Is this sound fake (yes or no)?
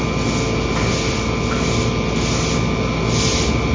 no